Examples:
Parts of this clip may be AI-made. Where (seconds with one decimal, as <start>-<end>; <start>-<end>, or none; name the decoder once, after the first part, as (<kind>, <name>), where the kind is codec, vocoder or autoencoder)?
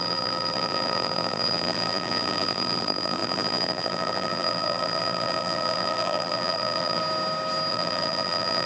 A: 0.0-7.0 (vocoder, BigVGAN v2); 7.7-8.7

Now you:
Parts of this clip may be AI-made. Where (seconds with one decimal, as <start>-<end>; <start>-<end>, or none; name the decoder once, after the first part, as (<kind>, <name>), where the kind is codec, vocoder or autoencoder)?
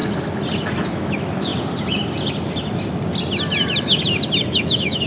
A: 0.9-1.5 (autoencoder, DAC-VAE); 4.6-5.1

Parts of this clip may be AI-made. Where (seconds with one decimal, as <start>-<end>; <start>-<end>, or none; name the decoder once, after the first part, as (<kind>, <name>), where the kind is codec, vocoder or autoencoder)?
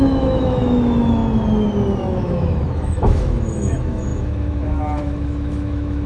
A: 0.0-1.2 (autoencoder, DAC-VAE); 2.0-6.1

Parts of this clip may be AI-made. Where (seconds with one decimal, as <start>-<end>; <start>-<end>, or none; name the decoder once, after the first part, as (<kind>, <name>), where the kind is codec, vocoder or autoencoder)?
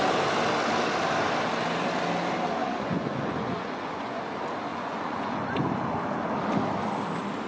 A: 2.6-4.2 (vocoder, Vocos); 4.7-5.7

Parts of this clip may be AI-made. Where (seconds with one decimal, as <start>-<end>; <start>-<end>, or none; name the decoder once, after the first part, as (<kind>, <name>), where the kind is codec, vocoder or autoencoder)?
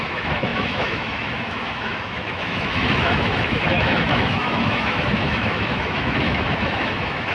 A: 0.0-7.3 (autoencoder, DAC-VAE)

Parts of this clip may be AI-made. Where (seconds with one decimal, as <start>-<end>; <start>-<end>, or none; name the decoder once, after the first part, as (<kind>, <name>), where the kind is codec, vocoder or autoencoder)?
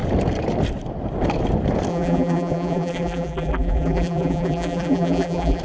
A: 1.9-5.6 (vocoder, BigVGAN v2)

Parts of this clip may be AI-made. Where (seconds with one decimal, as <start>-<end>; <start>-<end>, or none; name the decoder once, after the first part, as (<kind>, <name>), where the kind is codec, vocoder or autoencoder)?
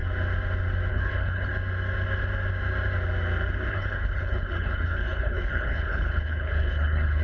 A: 0.9-1.5 (codec, HILCodec); 3.7-7.2